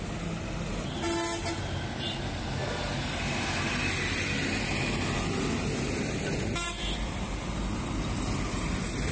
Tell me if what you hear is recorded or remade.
recorded